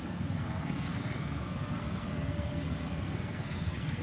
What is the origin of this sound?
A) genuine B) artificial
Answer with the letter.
B